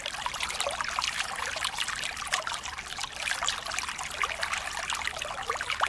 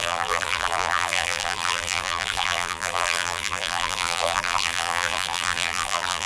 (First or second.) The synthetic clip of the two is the second